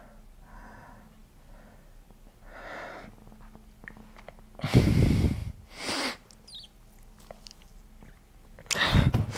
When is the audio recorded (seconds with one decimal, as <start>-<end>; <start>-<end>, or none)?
0.0-9.4